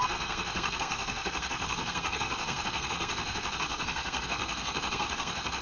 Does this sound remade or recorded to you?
remade